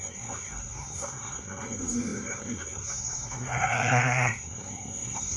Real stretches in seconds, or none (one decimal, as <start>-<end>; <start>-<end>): none